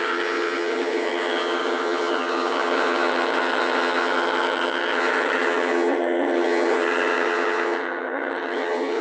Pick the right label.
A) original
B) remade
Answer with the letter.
B